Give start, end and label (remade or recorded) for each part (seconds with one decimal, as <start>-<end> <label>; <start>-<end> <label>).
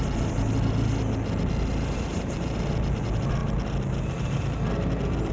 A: 0.0-2.1 recorded; 2.1-2.7 remade; 2.7-5.3 recorded